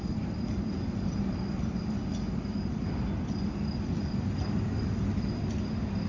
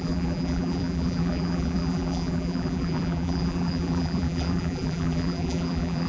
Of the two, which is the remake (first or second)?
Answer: second